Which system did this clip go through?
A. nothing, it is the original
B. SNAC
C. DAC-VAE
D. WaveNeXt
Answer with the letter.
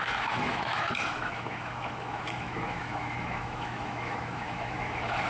C